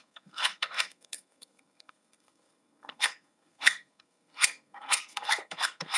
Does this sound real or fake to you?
fake